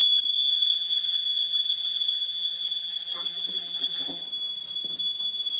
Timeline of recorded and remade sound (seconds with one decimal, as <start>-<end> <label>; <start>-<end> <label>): 0.0-0.5 recorded; 0.5-4.2 remade; 4.2-5.6 recorded